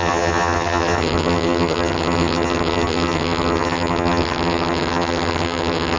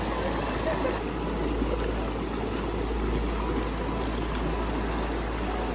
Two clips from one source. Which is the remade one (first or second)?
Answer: first